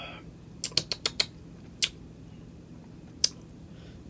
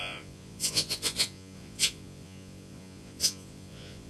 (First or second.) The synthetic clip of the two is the second